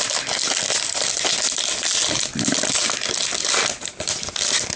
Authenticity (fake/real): real